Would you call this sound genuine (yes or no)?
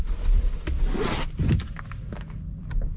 yes